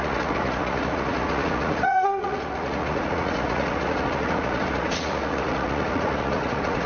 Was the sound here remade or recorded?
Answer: remade